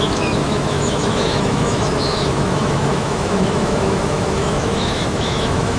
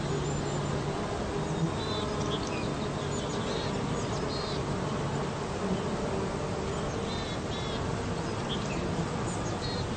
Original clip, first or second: second